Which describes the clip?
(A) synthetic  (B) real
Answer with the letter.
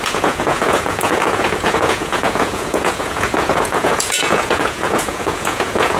A